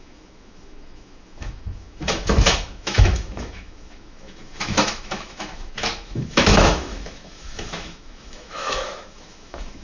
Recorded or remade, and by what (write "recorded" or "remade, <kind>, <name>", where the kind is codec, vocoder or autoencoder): remade, autoencoder, DAC-VAE